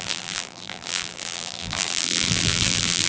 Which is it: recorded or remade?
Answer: remade